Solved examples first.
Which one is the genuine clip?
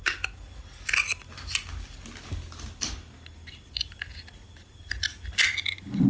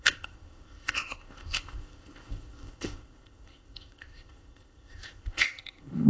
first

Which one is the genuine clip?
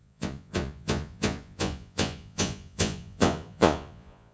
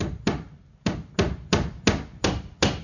second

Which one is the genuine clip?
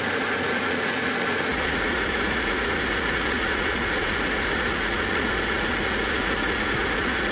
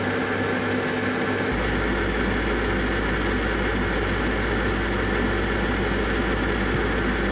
second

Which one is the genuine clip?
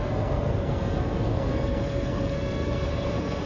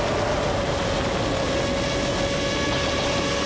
second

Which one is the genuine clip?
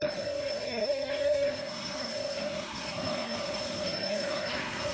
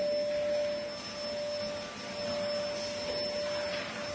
second